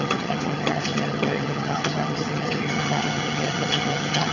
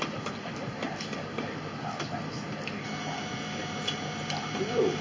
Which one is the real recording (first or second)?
second